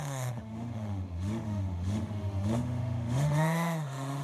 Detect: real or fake fake